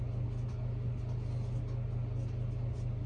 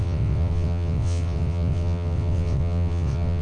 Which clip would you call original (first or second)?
first